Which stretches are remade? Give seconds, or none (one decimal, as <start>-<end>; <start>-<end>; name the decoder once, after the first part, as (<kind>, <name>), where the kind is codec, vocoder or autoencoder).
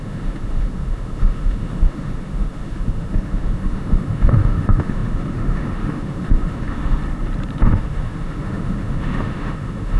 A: 0.0-7.0 (autoencoder, DAC-VAE); 7.6-10.0